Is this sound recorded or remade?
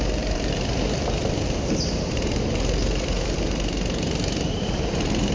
remade